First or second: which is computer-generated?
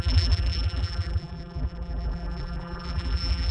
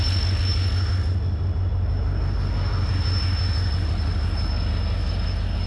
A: first